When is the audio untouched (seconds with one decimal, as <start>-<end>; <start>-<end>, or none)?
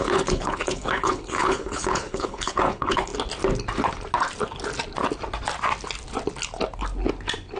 3.1-7.6